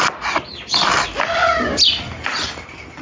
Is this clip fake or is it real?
real